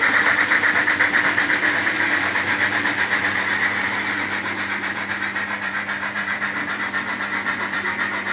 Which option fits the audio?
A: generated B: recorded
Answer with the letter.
A